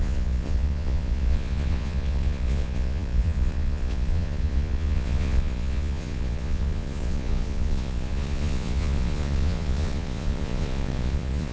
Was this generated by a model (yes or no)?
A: yes